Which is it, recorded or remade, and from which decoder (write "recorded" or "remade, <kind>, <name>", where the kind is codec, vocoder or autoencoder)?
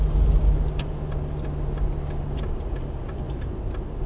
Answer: recorded